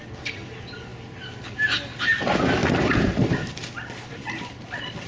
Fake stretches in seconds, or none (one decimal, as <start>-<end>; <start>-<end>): none